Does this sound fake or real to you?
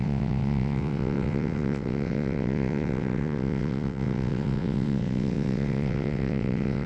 fake